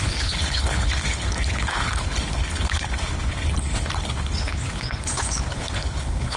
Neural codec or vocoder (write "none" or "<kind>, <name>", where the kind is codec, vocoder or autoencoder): codec, HILCodec